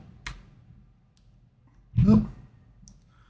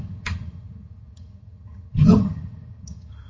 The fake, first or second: second